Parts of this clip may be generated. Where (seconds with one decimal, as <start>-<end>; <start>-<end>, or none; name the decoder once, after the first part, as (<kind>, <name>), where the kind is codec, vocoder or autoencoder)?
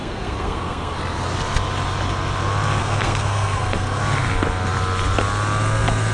0.0-1.0 (codec, SNAC); 2.8-4.0